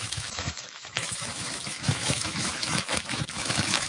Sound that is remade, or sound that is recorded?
remade